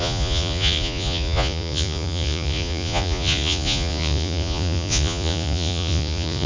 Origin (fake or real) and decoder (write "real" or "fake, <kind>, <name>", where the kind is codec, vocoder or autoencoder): fake, vocoder, Vocos